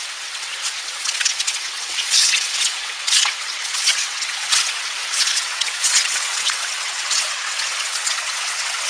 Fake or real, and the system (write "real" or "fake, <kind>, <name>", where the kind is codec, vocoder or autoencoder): fake, vocoder, WaveNeXt